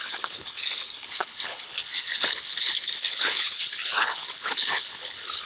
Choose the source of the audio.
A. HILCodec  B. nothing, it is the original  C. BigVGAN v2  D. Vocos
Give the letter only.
A